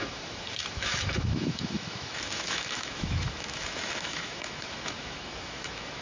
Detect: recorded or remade remade